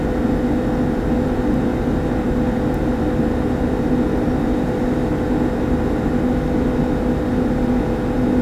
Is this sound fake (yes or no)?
no